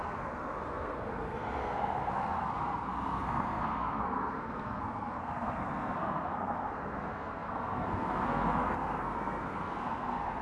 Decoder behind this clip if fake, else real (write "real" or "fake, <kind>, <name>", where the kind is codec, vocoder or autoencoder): fake, codec, SNAC